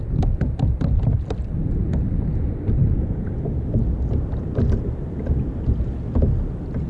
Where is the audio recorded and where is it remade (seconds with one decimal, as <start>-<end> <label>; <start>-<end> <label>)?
0.0-2.8 recorded; 2.8-3.3 remade; 3.3-6.9 recorded